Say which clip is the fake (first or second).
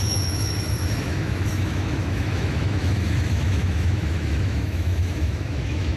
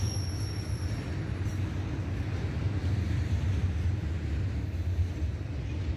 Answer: first